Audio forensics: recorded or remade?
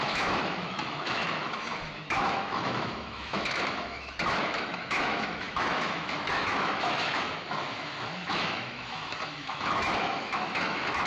remade